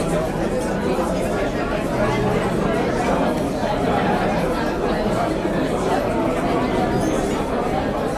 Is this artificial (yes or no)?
no